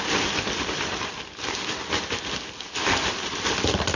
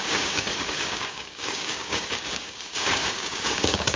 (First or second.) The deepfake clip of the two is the second